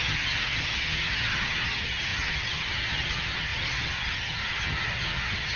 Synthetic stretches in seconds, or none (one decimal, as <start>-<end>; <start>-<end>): 0.0-5.6